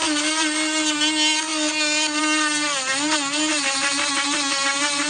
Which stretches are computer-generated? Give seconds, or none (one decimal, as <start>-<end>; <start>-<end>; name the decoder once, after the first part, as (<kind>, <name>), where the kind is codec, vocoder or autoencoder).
none